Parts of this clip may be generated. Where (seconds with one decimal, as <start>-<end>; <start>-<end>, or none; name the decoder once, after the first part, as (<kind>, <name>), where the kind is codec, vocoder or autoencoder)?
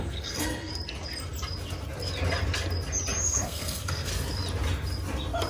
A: 0.0-0.7 (codec, SNAC); 3.2-4.1